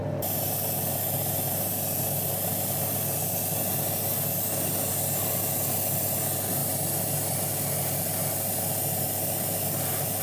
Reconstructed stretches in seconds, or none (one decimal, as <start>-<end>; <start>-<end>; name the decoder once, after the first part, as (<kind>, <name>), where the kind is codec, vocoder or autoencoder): none